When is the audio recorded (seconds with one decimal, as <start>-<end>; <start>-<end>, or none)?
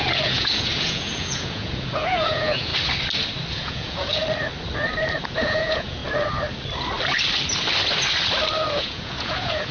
2.7-3.5; 4.2-5.2; 6.0-8.7